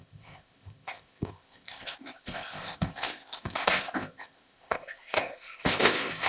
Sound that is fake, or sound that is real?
fake